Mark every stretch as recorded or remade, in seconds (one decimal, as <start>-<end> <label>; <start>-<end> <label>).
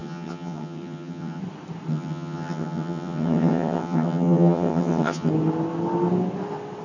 0.0-1.4 remade; 1.4-1.9 recorded; 1.9-5.3 remade; 5.3-6.8 recorded